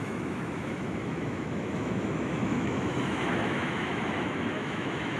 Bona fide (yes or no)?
no